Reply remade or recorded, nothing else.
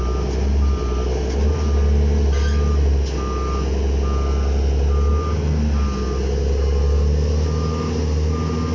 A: recorded